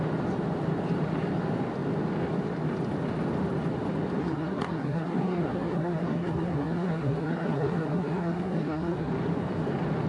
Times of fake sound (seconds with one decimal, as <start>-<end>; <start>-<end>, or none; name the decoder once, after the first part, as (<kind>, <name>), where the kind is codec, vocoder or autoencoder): 4.2-9.1 (codec, SNAC)